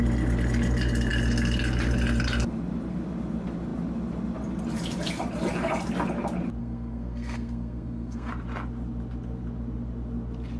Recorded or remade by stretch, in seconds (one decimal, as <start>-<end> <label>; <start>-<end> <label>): 0.0-6.6 recorded; 6.6-8.3 remade; 8.3-10.6 recorded